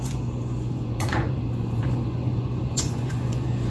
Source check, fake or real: fake